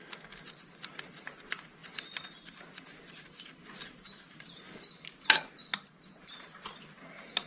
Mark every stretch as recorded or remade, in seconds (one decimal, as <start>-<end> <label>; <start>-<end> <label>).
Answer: 0.0-7.5 recorded